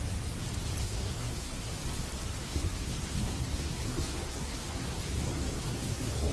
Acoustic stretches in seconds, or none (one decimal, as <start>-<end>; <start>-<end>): 0.0-0.8; 1.7-2.4

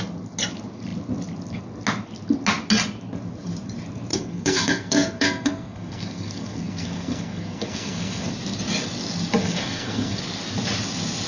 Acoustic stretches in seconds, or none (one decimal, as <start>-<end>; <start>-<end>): 0.0-4.1; 8.3-9.4; 10.2-11.3